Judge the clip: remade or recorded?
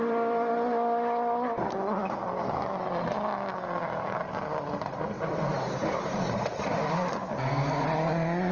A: recorded